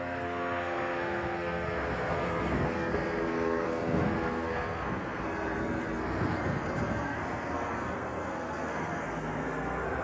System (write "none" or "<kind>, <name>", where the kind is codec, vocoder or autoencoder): codec, SNAC